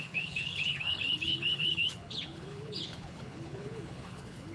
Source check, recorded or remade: remade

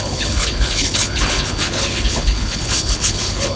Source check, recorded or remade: remade